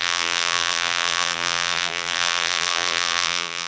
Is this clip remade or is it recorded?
remade